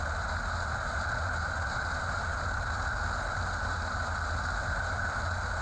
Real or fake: real